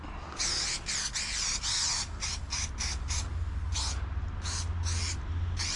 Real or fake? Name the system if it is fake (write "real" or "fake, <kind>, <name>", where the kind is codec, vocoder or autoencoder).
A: real